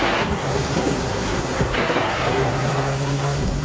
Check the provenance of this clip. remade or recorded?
remade